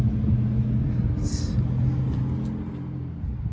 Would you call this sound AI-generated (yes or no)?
no